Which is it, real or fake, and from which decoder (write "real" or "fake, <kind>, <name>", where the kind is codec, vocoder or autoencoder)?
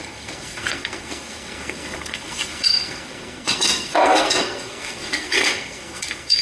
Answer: fake, codec, SNAC